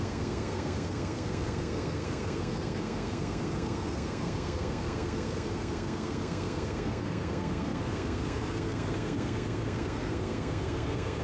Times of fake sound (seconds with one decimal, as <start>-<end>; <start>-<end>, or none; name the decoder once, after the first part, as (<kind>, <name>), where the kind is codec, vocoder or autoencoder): 0.0-11.2 (codec, SNAC)